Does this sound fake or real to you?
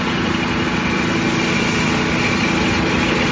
real